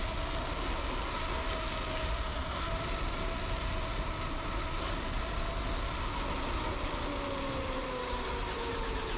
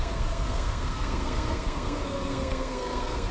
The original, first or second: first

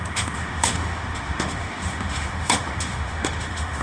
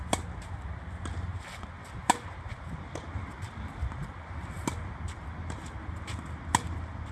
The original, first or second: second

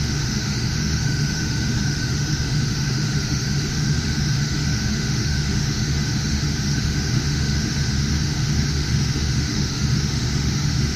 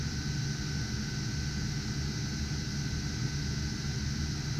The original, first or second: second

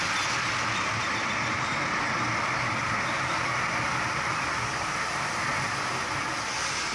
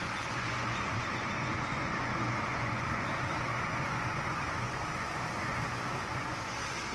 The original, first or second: first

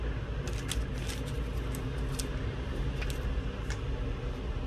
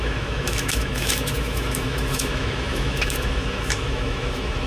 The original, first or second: first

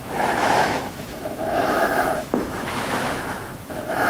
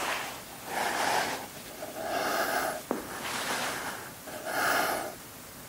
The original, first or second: second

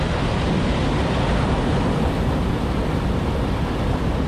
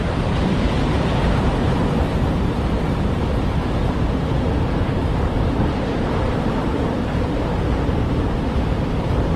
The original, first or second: first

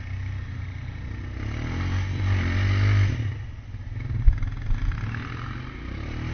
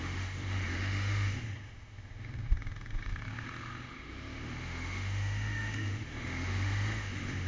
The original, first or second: first